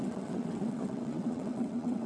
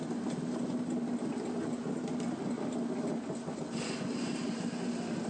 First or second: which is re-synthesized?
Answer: first